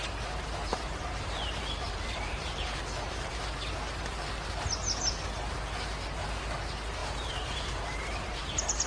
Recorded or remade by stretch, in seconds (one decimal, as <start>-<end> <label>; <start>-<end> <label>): 0.0-0.7 recorded; 0.7-3.4 remade; 3.4-7.0 recorded; 7.0-8.9 remade